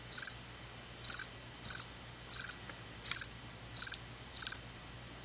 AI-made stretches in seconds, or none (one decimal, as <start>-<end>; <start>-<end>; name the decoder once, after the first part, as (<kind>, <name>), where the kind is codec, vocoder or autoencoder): none